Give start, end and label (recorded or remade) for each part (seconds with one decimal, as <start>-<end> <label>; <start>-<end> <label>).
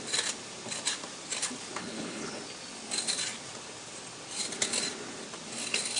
0.0-1.8 recorded; 1.8-2.4 remade; 2.4-6.0 recorded